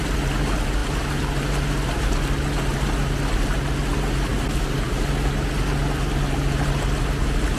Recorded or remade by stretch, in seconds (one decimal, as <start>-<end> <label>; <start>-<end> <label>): 0.0-7.6 recorded